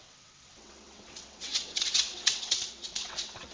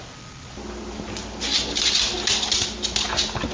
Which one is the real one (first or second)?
second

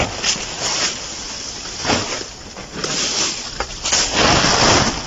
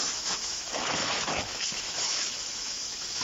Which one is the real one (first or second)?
first